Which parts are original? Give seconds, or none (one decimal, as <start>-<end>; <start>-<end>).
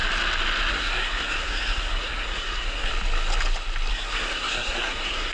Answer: 0.0-0.7; 2.9-3.9